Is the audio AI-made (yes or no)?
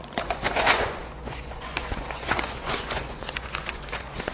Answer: yes